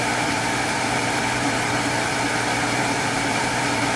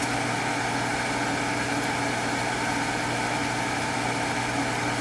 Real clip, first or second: second